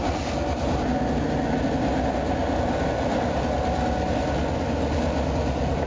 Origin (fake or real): real